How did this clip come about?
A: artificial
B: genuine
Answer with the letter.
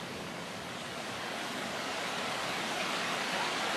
A